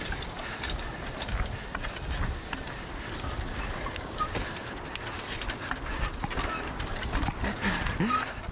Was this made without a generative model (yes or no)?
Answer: yes